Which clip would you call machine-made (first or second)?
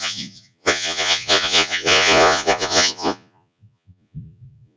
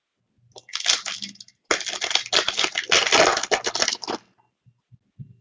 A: first